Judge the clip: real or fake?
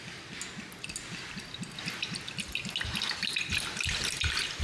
real